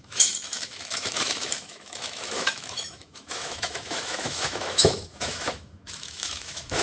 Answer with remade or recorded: remade